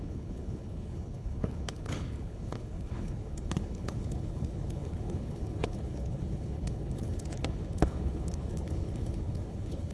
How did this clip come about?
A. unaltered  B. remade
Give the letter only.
B